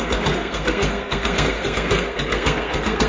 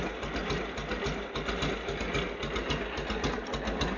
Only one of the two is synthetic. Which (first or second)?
first